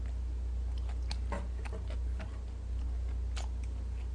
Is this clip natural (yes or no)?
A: yes